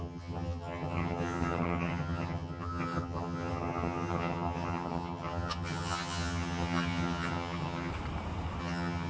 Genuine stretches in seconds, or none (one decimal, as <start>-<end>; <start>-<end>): 7.9-8.6